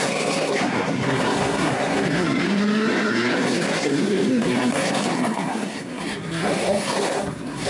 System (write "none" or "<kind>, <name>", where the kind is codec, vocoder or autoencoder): codec, SNAC